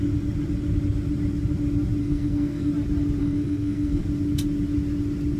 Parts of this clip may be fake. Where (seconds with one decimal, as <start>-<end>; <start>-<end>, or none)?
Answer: 2.0-2.7; 3.2-4.0